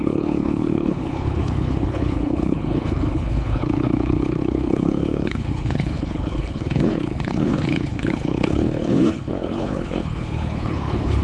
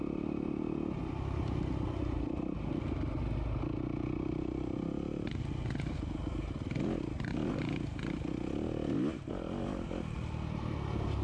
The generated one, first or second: first